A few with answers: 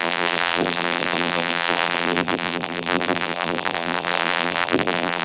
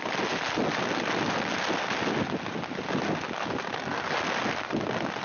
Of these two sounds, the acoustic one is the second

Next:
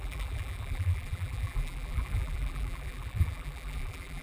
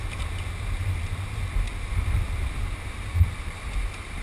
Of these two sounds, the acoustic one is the second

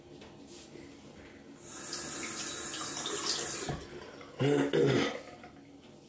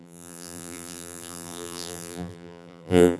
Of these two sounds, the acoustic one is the first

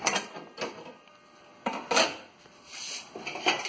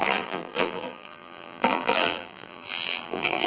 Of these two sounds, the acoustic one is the first